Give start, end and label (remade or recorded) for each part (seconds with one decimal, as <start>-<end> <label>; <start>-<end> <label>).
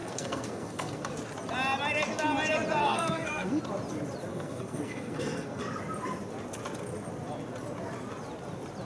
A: 0.0-1.1 remade; 1.1-2.8 recorded; 2.8-3.6 remade; 3.6-4.3 recorded; 4.3-5.6 remade; 5.6-8.8 recorded